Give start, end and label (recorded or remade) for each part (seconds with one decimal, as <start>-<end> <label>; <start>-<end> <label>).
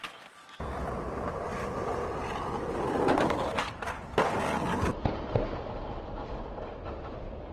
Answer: 0.0-1.5 recorded; 1.5-4.0 remade; 4.0-7.5 recorded